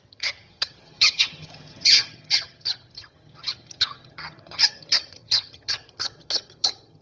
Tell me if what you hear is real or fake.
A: fake